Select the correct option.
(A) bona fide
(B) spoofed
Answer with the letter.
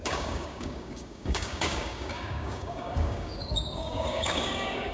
B